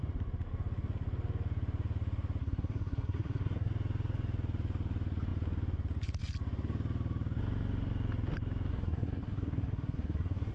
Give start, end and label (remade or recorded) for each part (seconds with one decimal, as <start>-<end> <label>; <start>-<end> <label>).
0.0-2.4 recorded; 2.4-3.7 remade; 3.7-8.7 recorded; 8.7-10.5 remade